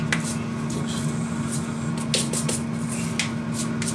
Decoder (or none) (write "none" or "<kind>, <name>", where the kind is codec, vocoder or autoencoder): none